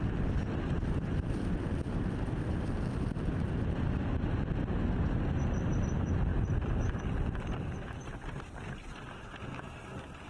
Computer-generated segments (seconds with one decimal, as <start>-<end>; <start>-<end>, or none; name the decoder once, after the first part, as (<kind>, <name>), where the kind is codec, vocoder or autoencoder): none